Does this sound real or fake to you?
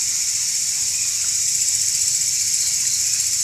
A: fake